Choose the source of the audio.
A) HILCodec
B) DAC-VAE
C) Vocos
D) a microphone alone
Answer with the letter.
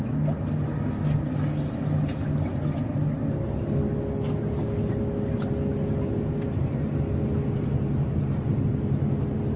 D